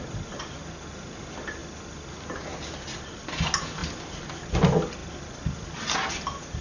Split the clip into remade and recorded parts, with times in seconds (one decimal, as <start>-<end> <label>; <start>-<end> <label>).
0.0-6.6 recorded